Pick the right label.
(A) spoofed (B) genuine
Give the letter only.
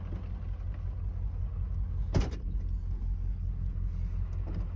B